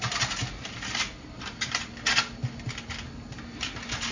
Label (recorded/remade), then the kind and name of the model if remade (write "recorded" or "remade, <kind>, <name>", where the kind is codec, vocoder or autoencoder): recorded